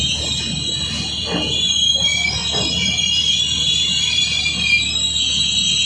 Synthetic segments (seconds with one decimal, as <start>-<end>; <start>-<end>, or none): none